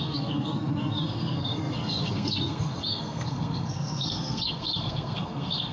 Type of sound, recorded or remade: remade